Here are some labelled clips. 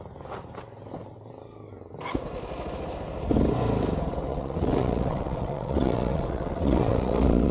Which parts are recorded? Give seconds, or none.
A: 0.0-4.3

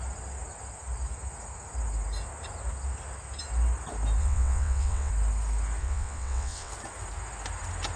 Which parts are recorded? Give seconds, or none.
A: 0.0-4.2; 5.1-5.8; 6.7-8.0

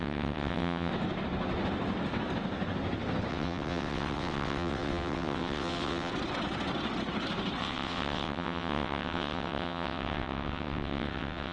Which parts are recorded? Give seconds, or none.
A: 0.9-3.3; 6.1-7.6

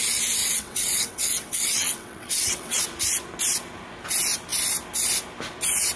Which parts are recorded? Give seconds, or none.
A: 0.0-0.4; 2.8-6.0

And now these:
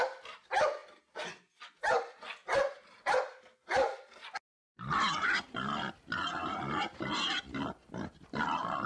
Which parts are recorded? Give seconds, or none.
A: 0.0-8.9

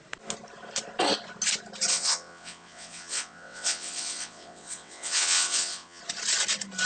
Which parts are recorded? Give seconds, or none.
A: 0.0-1.9; 6.0-6.9

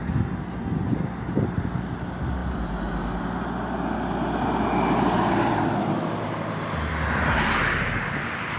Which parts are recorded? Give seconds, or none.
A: 0.0-8.6